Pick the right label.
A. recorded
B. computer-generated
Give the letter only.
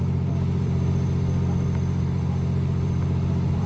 B